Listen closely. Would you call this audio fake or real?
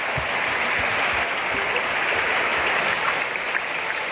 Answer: real